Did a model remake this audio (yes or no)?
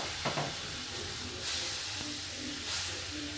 no